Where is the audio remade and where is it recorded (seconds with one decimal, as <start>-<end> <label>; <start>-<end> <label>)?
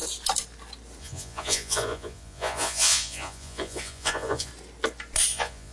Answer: 0.0-1.0 recorded; 1.0-4.5 remade; 4.5-5.3 recorded; 5.3-5.7 remade